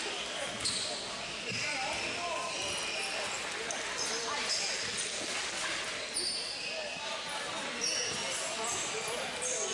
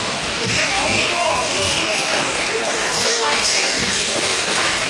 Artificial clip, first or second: second